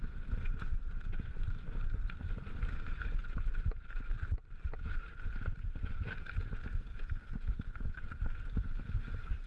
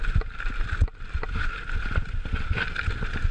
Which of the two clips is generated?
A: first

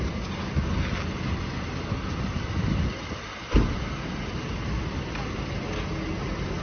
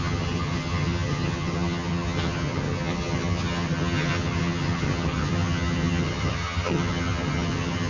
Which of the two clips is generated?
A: second